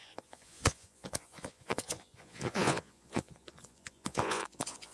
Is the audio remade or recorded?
remade